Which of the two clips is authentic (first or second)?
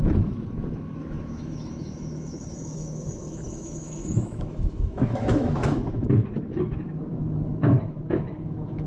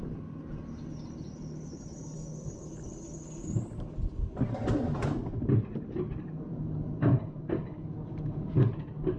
second